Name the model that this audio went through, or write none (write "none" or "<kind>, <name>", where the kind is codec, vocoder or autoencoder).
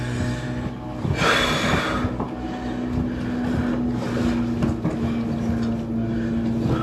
none